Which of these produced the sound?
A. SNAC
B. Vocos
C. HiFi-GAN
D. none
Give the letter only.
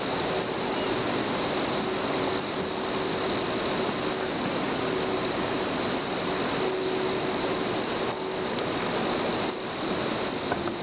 D